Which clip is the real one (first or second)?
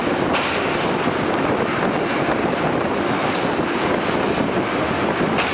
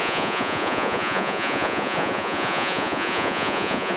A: first